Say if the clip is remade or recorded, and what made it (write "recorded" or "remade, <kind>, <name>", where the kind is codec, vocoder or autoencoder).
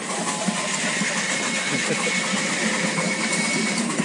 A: recorded